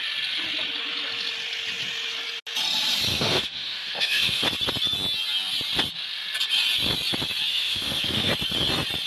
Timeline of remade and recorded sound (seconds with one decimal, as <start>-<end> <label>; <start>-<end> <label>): 0.0-3.1 recorded; 3.1-4.4 remade; 4.4-7.5 recorded; 7.5-8.3 remade; 8.3-9.1 recorded